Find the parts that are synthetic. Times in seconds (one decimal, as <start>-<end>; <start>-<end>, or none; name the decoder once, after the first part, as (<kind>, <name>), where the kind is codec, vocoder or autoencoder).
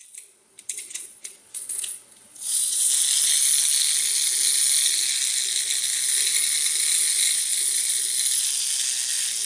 0.0-2.9 (vocoder, Vocos)